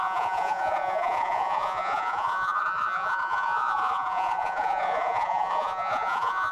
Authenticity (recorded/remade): remade